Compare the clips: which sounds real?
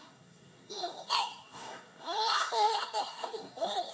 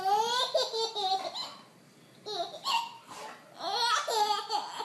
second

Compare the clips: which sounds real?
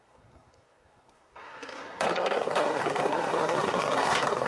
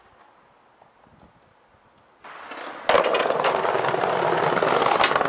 second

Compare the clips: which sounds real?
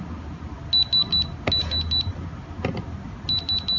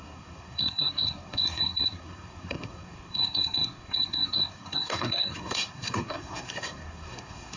first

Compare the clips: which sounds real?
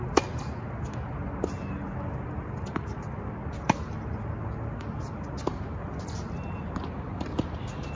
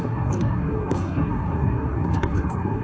first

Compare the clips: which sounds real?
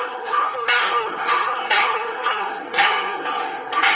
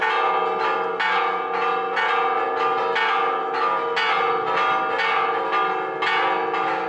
second